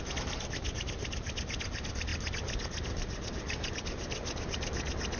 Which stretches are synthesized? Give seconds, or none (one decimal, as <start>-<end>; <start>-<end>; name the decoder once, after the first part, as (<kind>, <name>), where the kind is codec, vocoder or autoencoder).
none